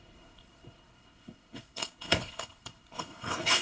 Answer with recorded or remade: remade